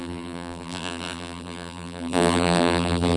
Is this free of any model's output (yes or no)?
no